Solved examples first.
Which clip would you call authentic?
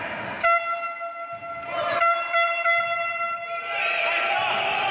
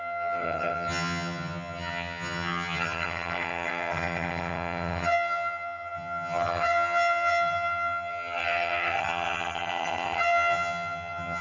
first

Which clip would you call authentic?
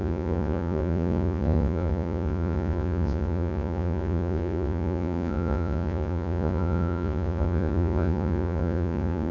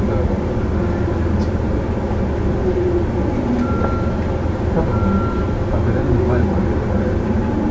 second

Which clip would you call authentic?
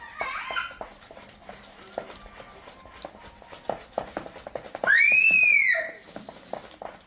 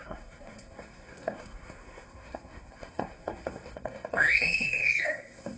first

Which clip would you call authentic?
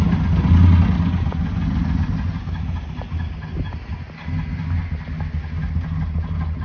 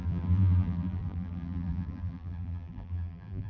first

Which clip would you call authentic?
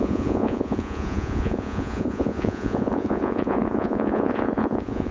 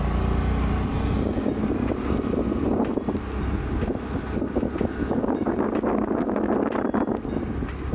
second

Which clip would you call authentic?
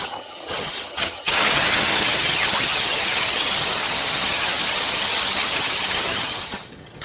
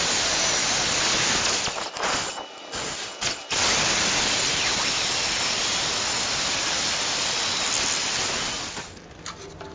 second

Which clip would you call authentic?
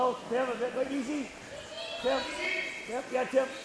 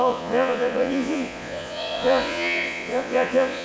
first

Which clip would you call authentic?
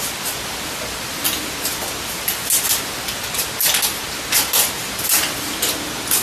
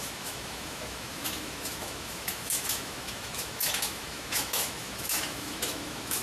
first